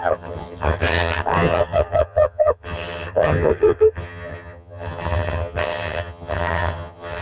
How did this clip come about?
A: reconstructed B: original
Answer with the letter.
A